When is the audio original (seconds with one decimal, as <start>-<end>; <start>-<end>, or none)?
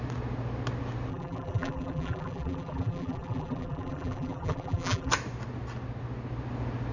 0.0-1.1; 5.1-6.9